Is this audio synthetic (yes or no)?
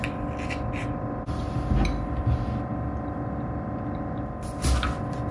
no